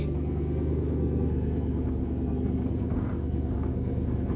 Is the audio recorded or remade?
remade